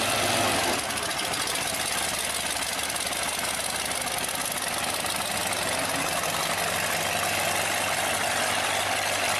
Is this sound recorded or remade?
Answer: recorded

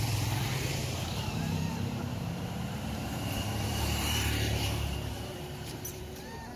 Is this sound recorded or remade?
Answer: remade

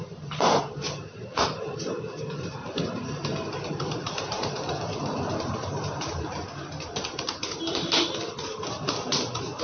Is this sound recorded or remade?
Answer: remade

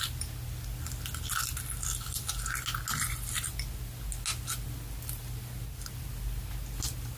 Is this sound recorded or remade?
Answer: recorded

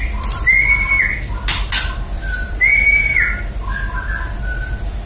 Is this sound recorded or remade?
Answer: remade